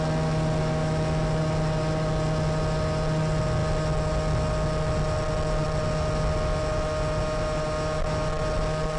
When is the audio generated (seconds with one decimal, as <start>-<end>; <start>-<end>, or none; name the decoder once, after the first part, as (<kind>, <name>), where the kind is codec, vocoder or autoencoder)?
0.6-1.4 (autoencoder, DAC-VAE)